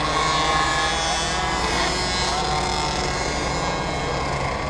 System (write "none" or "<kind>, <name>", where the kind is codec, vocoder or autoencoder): none